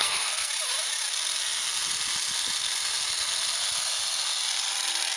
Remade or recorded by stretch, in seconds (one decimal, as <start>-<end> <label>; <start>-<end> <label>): 0.0-0.5 remade; 0.5-5.2 recorded